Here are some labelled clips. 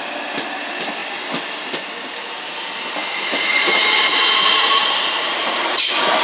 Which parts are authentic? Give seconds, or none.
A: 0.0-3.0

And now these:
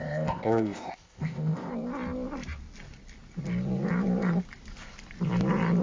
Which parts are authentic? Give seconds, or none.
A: 1.7-5.8

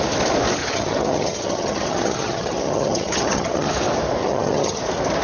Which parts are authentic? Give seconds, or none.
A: 0.0-0.6; 3.7-4.2; 4.8-5.2

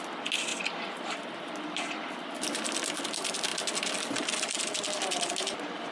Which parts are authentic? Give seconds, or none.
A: 0.0-5.9

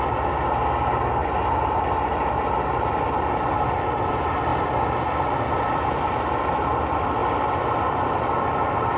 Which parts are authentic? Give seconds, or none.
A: 0.0-9.0